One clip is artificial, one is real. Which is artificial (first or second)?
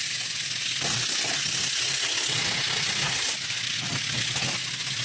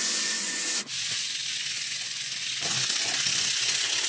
second